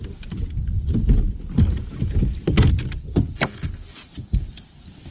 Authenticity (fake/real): real